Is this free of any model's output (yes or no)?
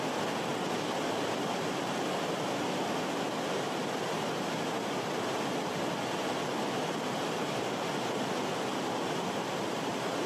yes